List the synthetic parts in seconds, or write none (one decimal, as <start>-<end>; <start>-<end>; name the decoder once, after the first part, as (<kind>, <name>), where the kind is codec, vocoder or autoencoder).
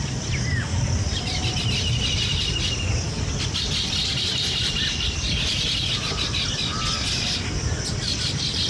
none